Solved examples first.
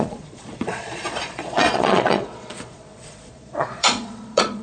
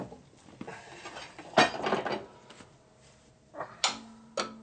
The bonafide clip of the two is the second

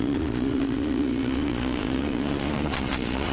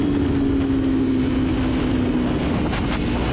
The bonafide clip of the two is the second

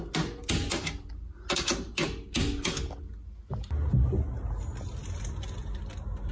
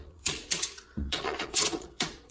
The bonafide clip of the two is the first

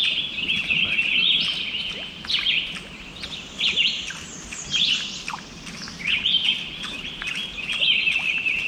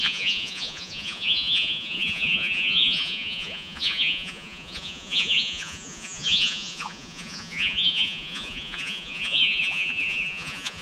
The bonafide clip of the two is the first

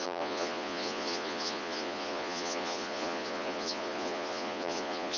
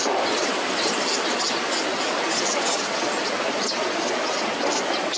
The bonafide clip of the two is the second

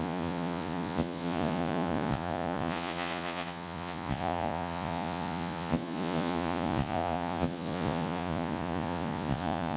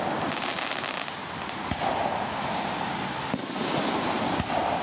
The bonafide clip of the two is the second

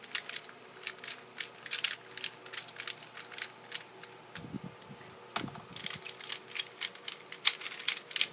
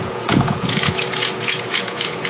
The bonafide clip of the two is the first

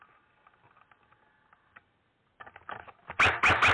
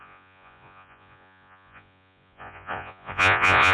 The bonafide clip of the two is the first